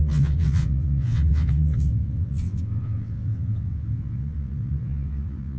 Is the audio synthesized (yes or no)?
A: yes